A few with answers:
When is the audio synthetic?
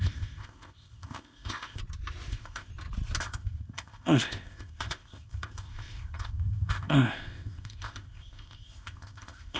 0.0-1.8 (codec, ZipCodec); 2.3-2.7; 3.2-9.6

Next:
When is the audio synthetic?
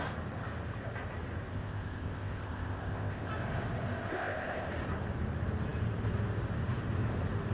1.5-3.3 (codec, ZipCodec); 4.1-4.7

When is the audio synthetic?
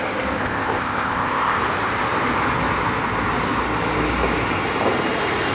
0.4-1.6 (codec, ZipCodec)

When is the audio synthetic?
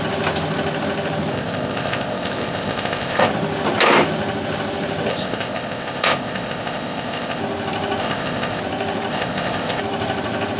1.3-3.3 (codec, ZipCodec); 5.1-7.4; 8.0-8.6; 9.1-9.8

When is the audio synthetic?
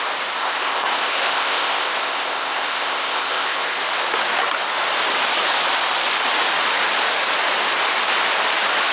0.4-3.8 (codec, ZipCodec)